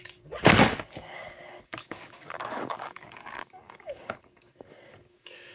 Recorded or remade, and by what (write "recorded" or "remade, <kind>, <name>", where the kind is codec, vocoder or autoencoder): remade, codec, DAC